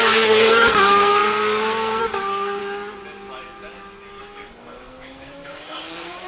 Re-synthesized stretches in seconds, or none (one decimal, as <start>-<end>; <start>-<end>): 0.0-2.6; 4.2-6.3